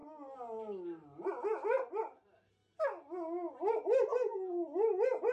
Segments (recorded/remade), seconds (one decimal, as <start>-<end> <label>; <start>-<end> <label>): 0.0-5.3 recorded